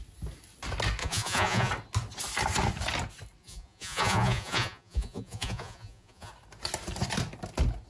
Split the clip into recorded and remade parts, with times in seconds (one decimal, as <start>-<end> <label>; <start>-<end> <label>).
0.0-1.0 recorded; 1.0-1.7 remade; 1.7-3.4 recorded; 3.4-6.3 remade; 6.3-7.9 recorded